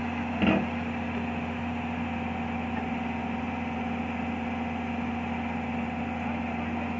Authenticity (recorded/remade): recorded